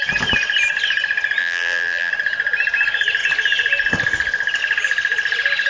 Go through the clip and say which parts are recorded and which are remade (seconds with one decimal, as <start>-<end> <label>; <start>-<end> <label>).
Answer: 0.0-1.4 recorded; 1.4-2.1 remade; 2.1-5.7 recorded

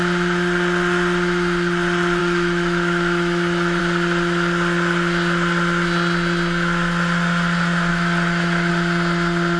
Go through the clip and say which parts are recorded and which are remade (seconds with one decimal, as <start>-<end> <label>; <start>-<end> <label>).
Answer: 0.0-2.2 recorded; 2.2-3.8 remade; 3.8-7.9 recorded; 7.9-8.7 remade; 8.7-9.6 recorded